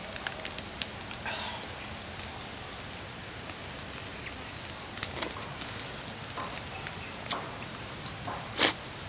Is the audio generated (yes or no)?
no